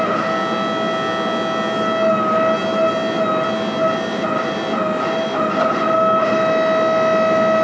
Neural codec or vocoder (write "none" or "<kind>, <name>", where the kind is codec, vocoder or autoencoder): none